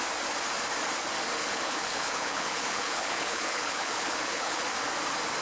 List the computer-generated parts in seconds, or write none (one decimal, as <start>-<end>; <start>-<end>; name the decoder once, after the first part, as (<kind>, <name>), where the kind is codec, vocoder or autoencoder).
1.4-4.6 (codec, HILCodec)